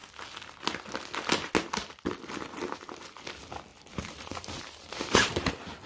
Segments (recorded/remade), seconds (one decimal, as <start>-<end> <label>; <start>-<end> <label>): 0.0-3.7 recorded; 3.7-5.5 remade; 5.5-5.9 recorded